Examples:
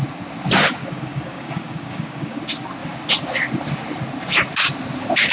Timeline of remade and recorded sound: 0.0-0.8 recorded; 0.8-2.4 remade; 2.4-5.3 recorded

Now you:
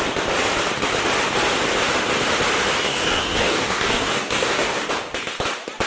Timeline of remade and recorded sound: 0.0-2.9 recorded; 2.9-4.9 remade; 4.9-5.9 recorded

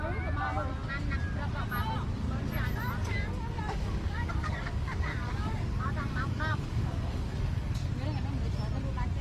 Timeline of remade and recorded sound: 0.0-3.0 recorded; 3.0-7.9 remade; 7.9-9.2 recorded

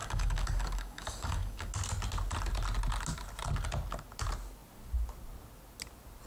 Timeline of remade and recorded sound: 0.0-1.7 remade; 1.7-6.3 recorded

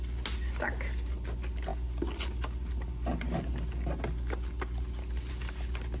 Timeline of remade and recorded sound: 0.0-6.0 recorded

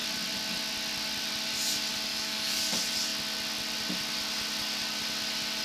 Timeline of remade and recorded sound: 0.0-2.1 recorded; 2.1-2.7 remade; 2.7-5.6 recorded

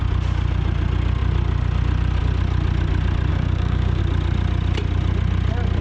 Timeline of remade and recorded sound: 0.0-3.3 recorded; 3.3-4.0 remade; 4.0-5.8 recorded